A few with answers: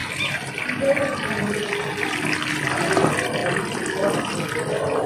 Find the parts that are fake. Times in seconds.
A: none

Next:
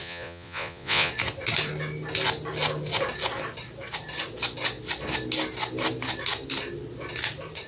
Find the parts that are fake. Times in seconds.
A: 0.0-1.1

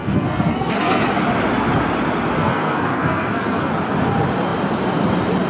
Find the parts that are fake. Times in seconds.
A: 0.0-1.0; 2.4-3.7